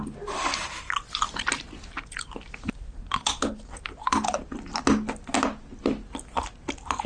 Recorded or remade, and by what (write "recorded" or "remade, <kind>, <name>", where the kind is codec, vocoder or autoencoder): recorded